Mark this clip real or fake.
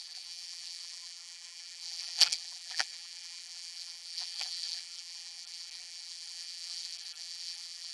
fake